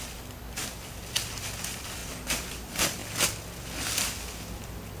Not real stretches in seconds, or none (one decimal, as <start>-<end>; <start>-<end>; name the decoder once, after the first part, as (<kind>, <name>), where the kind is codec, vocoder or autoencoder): 0.0-2.0 (vocoder, BigVGAN v2); 2.5-3.0